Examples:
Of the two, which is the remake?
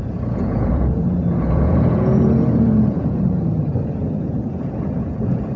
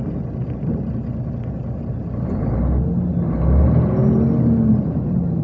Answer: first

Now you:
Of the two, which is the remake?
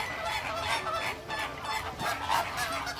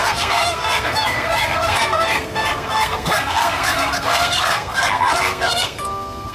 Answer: second